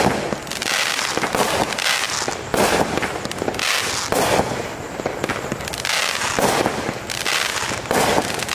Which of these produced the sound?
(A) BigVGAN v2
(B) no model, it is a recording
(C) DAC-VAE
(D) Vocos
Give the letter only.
B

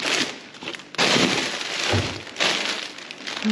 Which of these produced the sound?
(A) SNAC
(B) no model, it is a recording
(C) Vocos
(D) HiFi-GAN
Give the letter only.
B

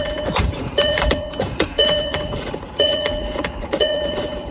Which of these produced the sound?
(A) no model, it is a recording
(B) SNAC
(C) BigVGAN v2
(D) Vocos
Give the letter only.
D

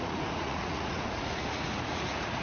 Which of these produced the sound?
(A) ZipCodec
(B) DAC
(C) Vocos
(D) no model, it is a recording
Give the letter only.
C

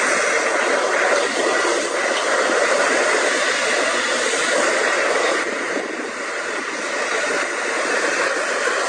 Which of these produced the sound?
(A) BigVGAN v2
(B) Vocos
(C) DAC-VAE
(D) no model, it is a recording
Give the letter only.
D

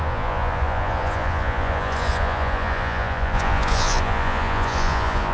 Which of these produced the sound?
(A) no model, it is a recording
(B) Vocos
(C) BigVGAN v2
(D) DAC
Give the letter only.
B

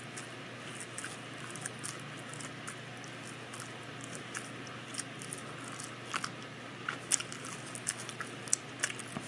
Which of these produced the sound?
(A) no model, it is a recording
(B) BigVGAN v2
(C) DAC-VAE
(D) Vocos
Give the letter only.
A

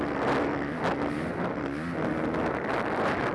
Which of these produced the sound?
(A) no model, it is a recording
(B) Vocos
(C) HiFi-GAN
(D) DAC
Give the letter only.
A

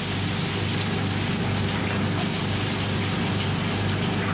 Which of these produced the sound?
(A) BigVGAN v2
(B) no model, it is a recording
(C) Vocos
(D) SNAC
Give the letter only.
B